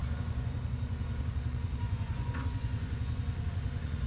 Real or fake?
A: fake